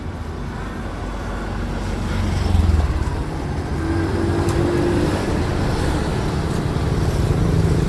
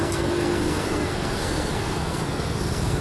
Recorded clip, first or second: first